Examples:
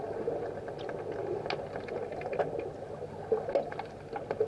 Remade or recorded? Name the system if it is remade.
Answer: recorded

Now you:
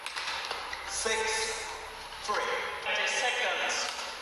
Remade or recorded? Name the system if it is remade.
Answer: recorded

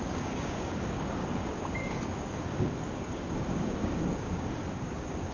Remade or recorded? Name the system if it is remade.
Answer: remade, codec, DAC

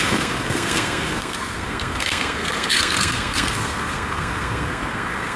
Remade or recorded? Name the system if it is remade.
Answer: remade, codec, SNAC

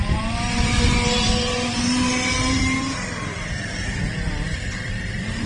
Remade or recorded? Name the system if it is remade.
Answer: remade, vocoder, BigVGAN v2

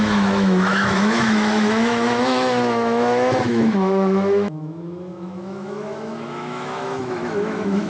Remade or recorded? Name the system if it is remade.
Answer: remade, autoencoder, DAC-VAE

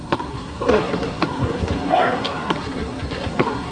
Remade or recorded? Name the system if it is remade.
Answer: remade, codec, SNAC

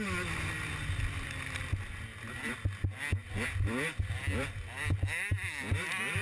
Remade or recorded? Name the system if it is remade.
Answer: recorded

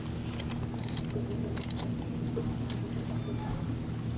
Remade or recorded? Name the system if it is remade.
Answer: recorded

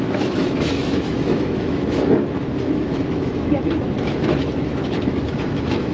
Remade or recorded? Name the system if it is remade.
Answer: remade, autoencoder, DAC-VAE